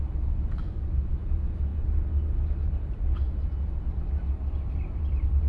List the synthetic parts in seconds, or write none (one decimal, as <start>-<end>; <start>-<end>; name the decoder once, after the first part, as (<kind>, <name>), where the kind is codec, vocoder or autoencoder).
none

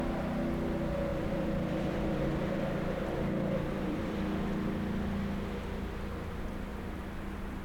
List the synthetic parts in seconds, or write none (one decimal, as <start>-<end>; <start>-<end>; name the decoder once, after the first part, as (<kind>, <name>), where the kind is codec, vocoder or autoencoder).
1.1-4.2 (vocoder, BigVGAN v2)

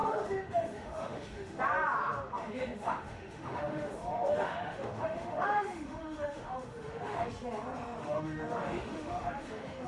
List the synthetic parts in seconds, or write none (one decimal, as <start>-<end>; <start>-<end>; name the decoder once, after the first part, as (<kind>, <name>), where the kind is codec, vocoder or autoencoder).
0.0-1.6 (autoencoder, DAC-VAE); 2.3-7.3; 8.0-9.9

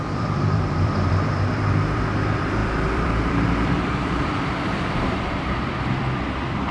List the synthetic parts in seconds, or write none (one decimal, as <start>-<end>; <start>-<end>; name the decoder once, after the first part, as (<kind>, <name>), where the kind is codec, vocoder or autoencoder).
0.0-6.7 (vocoder, BigVGAN v2)

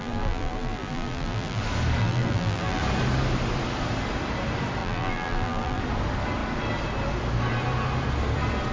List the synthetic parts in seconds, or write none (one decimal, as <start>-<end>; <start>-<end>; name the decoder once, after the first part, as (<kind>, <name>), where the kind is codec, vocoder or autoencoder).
0.0-1.6 (vocoder, BigVGAN v2); 2.0-2.8; 4.8-5.8

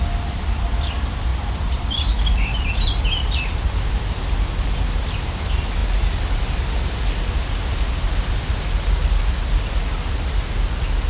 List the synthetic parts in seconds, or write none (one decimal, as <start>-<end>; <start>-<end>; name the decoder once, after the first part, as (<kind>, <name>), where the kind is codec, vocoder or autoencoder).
none